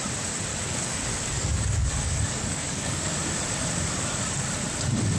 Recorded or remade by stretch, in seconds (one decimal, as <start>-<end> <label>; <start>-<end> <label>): 0.0-0.5 recorded; 0.5-3.1 remade; 3.1-5.2 recorded